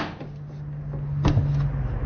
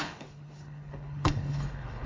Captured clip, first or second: first